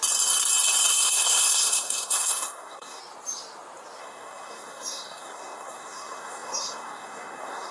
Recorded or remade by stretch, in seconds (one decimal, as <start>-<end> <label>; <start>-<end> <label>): 0.0-0.9 recorded; 0.9-3.0 remade; 3.0-4.0 recorded; 4.0-7.7 remade